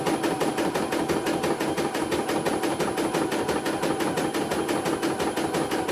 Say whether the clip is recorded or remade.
recorded